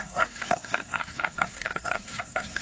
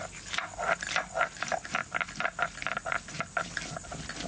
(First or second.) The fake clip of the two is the first